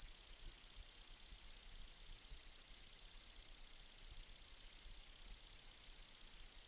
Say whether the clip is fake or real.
real